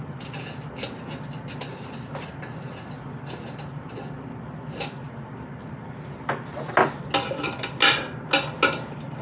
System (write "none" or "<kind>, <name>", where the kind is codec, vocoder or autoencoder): none